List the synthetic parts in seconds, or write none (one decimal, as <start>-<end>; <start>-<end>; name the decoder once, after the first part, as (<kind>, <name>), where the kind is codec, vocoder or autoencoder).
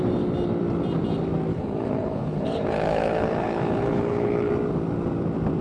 1.5-4.5 (codec, HILCodec)